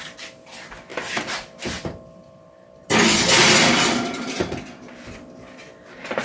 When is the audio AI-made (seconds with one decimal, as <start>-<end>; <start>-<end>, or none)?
0.9-4.6